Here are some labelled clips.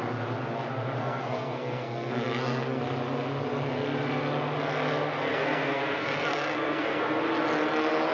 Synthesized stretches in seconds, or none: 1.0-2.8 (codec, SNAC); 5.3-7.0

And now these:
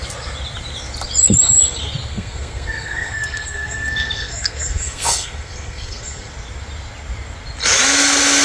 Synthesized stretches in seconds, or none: 2.1-6.3 (codec, SNAC)